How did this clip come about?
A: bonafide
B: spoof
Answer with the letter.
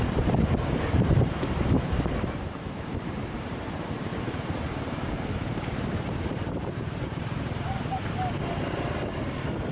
B